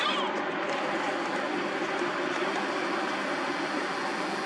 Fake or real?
real